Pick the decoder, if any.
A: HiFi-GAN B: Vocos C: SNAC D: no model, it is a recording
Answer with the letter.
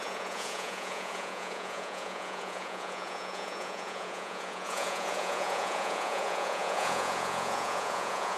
B